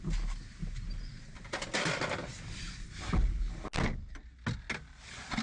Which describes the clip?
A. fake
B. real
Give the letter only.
B